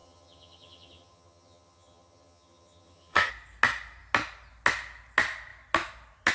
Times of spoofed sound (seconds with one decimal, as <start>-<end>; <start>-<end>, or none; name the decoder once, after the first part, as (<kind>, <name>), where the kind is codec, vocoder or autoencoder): 0.0-3.3 (vocoder, HiFi-GAN)